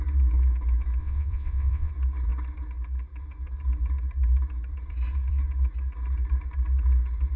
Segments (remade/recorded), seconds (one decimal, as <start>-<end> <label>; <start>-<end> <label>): 0.0-1.0 recorded; 1.0-1.9 remade; 1.9-7.4 recorded